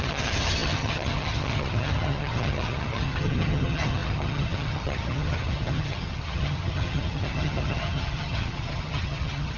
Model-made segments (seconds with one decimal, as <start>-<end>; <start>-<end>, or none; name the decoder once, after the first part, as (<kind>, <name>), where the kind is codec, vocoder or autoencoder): 0.0-9.6 (vocoder, HiFi-GAN)